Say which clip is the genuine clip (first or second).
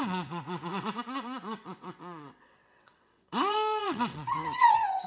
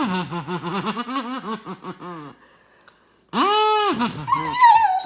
second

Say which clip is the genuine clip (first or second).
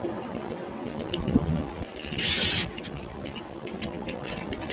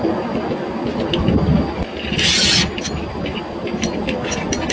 second